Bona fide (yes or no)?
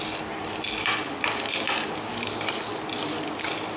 yes